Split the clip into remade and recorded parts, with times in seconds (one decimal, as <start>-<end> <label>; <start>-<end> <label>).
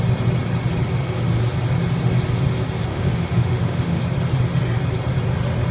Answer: 0.0-2.9 recorded; 2.9-4.0 remade; 4.0-5.7 recorded